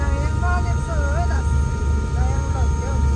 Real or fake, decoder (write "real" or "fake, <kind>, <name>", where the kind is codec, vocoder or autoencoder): real